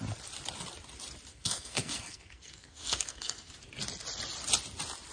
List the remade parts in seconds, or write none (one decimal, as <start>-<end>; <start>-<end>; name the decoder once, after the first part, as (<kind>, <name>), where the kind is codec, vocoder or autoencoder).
1.3-3.5 (codec, SNAC)